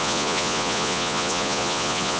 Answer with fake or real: fake